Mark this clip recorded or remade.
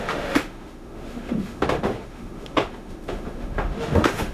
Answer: remade